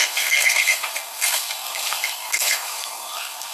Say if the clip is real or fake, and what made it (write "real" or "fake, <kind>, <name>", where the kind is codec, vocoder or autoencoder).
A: fake, codec, SNAC